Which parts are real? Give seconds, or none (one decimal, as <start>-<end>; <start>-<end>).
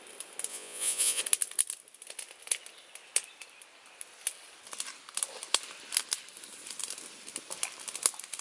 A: 0.0-0.5; 1.2-8.4